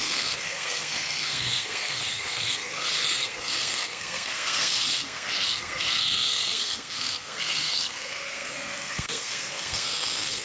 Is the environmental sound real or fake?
fake